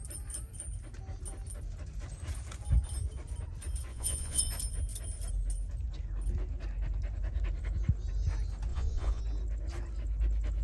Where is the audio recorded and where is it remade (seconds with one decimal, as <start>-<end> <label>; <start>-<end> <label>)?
0.0-3.9 recorded; 3.9-4.5 remade; 4.5-8.7 recorded; 8.7-9.2 remade; 9.2-10.6 recorded

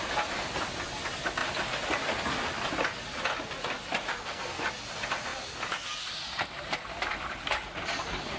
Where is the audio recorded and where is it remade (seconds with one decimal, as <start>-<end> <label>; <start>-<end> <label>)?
0.0-4.1 recorded; 4.1-4.6 remade; 4.6-8.4 recorded

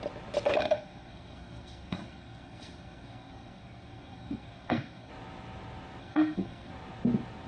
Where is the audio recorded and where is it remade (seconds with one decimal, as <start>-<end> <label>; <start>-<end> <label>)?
0.0-0.6 recorded; 0.6-5.1 remade; 5.1-6.0 recorded; 6.0-6.7 remade; 6.7-7.5 recorded